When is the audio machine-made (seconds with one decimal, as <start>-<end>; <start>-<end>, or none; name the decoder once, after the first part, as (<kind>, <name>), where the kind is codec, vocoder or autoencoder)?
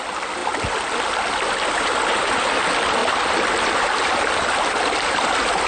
none